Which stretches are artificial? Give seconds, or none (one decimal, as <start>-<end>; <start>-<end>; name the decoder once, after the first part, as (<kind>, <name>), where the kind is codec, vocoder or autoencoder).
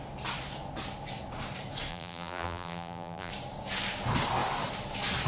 1.9-3.3 (vocoder, BigVGAN v2)